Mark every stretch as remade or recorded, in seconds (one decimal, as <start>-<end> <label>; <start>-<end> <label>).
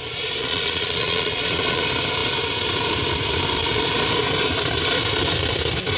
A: 0.0-0.4 recorded; 0.4-1.8 remade; 1.8-6.0 recorded